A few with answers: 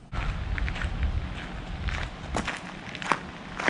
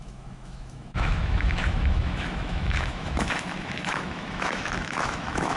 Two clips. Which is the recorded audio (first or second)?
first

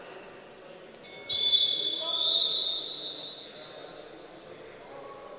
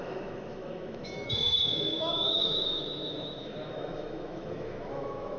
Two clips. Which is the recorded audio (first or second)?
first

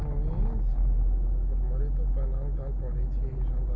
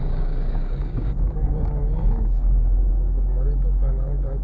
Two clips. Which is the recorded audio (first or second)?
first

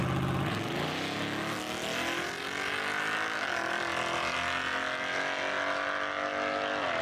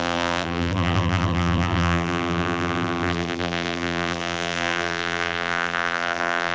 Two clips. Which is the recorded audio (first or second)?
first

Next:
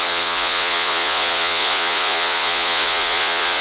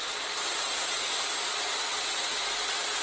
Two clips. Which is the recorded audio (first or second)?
second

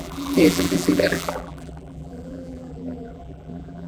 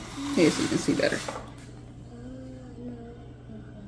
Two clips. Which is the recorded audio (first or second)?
second